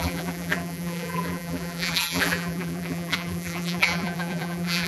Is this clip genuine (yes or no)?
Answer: no